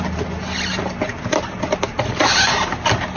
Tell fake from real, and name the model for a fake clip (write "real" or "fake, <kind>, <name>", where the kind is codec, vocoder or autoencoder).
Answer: real